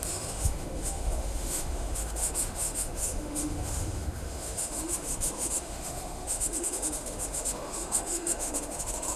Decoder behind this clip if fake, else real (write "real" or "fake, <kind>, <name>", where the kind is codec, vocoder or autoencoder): fake, autoencoder, DAC-VAE